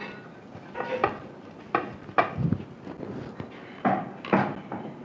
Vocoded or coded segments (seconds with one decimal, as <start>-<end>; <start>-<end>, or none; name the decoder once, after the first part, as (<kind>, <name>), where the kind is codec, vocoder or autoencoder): none